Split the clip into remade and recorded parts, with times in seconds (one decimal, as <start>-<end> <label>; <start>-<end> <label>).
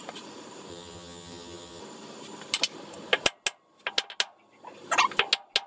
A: 0.0-0.7 recorded; 0.7-1.8 remade; 1.8-5.7 recorded